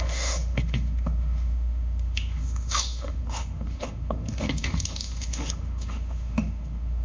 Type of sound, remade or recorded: remade